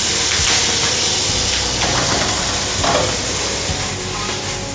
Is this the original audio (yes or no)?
yes